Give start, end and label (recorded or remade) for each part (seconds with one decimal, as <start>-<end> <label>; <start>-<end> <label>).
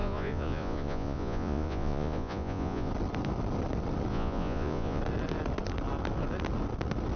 0.0-2.9 remade; 2.9-4.1 recorded; 4.1-5.0 remade; 5.0-7.2 recorded